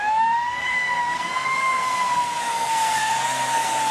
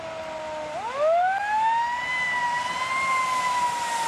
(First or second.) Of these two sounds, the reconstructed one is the first